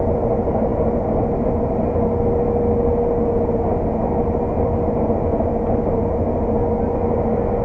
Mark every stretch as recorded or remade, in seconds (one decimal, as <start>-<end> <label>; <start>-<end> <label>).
0.0-7.6 recorded